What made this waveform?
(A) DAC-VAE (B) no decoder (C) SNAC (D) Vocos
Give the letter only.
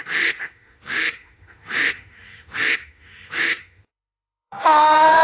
A